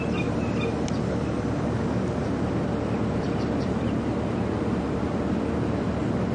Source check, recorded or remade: recorded